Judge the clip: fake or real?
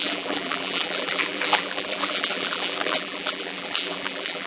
fake